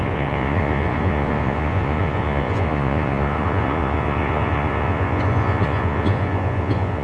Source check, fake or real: fake